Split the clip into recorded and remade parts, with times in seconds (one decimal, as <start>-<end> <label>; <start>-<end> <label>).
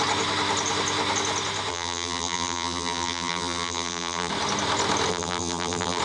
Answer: 0.0-1.7 recorded; 1.7-4.3 remade; 4.3-5.1 recorded; 5.1-6.0 remade